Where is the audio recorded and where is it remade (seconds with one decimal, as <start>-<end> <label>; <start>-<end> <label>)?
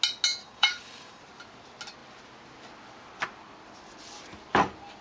0.0-0.4 recorded; 0.4-1.2 remade; 1.2-5.0 recorded